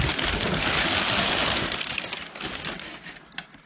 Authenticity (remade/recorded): recorded